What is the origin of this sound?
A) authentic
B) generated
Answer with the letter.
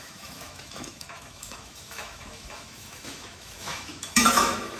B